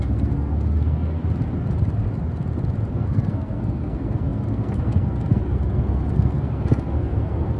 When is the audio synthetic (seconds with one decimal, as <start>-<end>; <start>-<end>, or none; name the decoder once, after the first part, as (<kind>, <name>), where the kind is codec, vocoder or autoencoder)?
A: 0.0-1.2 (codec, SNAC); 2.9-7.6